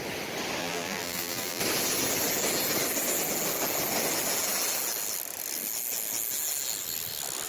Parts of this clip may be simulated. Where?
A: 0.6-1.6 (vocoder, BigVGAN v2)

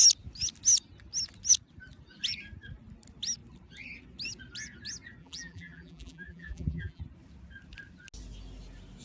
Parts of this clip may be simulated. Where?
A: 5.2-7.0 (vocoder, BigVGAN v2)

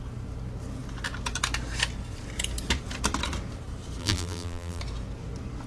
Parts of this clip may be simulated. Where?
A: 4.0-4.8 (vocoder, BigVGAN v2)